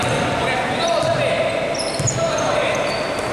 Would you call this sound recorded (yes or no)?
yes